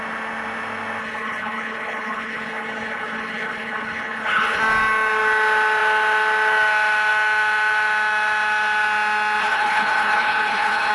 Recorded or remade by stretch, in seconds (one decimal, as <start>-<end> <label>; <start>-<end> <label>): 0.0-1.0 recorded; 1.0-4.6 remade; 4.6-9.4 recorded; 9.4-10.9 remade